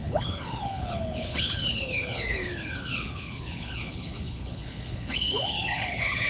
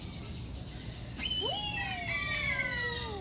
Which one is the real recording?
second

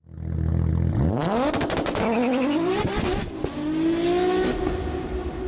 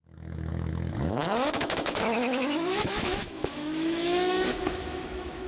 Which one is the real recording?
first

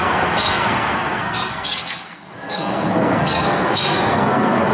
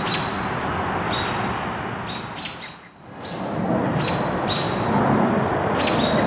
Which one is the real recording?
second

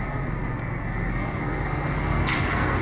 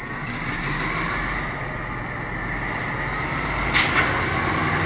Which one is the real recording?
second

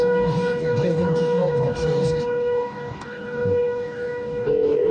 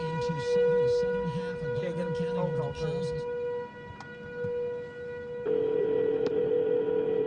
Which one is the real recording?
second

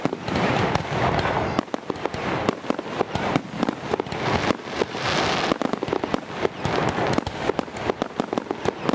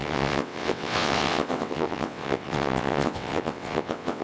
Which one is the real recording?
first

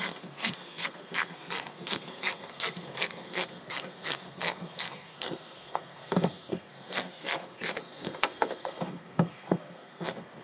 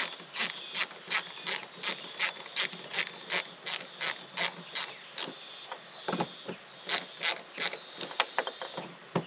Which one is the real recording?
second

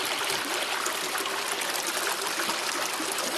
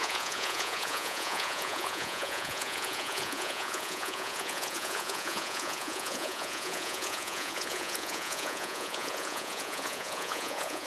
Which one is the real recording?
first